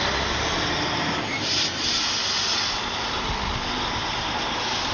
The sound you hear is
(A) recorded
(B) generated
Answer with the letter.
A